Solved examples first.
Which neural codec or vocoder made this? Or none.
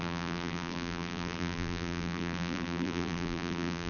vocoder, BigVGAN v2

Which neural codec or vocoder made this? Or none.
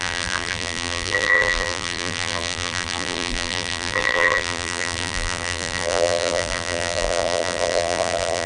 vocoder, BigVGAN v2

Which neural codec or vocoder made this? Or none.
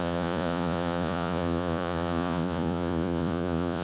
vocoder, Vocos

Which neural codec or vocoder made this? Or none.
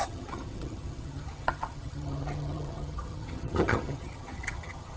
vocoder, HiFi-GAN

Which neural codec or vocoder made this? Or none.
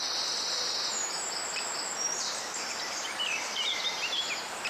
vocoder, BigVGAN v2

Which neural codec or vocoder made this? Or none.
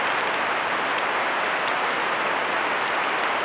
none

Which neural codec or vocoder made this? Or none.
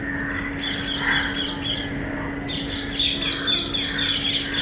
none